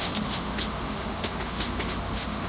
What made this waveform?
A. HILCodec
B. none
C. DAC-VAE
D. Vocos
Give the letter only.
C